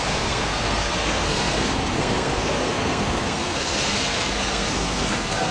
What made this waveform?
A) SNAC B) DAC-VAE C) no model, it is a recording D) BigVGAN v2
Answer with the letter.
A